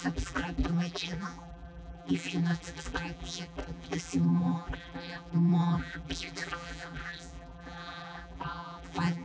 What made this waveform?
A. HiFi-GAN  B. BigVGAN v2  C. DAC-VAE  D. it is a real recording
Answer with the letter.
B